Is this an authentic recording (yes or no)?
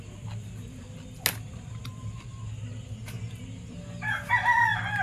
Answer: yes